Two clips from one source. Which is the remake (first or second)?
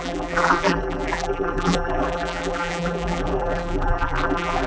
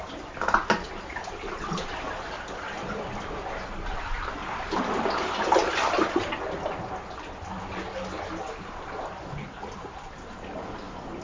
first